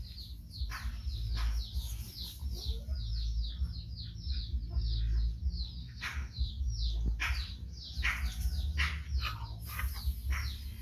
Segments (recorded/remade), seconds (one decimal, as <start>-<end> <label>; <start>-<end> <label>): 0.0-5.8 recorded; 5.8-6.5 remade; 6.5-10.8 recorded